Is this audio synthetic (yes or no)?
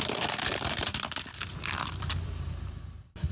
yes